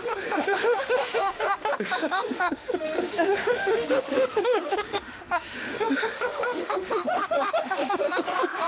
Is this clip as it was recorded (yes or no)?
no